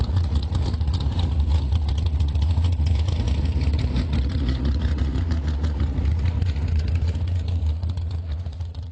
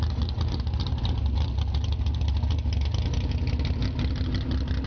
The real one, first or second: second